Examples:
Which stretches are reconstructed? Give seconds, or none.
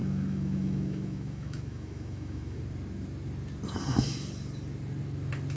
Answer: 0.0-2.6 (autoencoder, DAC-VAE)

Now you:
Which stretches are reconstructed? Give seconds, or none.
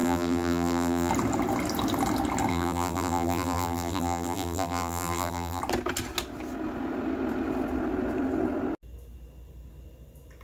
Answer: 0.0-1.1 (vocoder, BigVGAN v2); 2.5-5.6